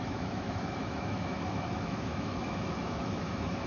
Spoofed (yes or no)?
yes